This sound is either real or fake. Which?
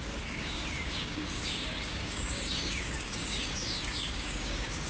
fake